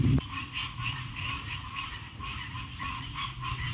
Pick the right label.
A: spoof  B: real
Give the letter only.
A